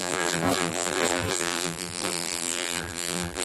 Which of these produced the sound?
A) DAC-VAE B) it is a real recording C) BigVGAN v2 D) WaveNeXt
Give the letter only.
C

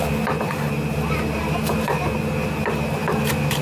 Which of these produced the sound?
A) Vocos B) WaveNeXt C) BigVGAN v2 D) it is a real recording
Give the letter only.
C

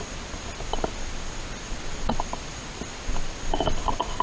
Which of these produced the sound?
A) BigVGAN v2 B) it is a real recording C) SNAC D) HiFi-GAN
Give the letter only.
B